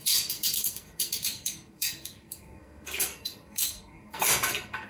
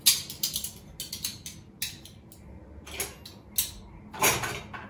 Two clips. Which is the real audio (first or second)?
second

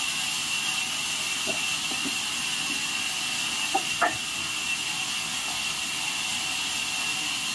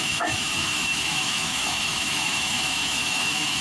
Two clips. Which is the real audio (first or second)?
first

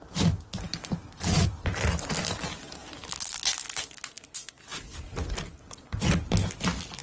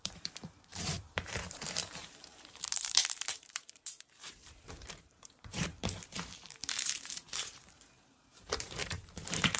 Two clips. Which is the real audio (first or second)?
first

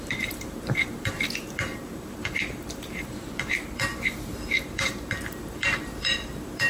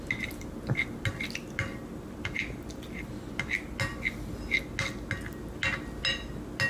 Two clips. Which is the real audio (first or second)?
second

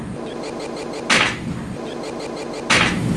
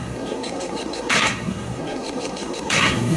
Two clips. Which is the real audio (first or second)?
first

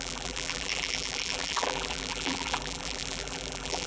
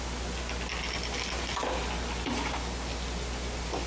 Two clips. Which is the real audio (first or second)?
second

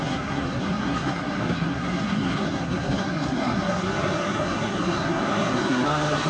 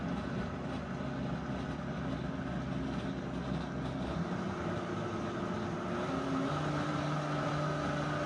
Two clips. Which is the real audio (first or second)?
second